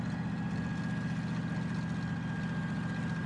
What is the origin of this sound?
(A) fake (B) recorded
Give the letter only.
B